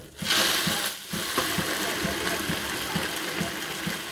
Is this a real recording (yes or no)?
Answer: yes